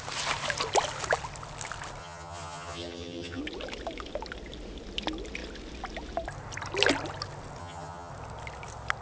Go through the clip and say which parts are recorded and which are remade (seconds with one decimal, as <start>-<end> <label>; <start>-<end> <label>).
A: 0.0-2.0 recorded; 2.0-3.4 remade; 3.4-7.6 recorded; 7.6-8.1 remade; 8.1-9.0 recorded